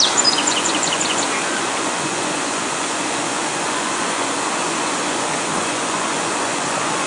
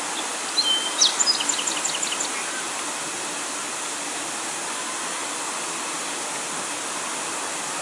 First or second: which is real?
second